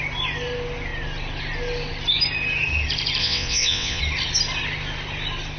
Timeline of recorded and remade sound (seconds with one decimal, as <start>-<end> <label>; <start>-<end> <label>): 0.0-3.2 recorded; 3.2-4.0 remade; 4.0-5.6 recorded